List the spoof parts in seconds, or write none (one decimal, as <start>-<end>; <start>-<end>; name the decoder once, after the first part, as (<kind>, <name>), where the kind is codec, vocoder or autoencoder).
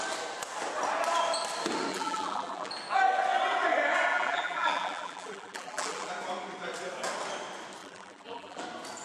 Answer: 1.9-2.7 (vocoder, BigVGAN v2); 4.1-6.1; 7.8-8.6